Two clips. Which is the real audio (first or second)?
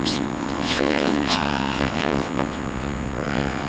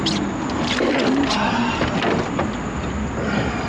second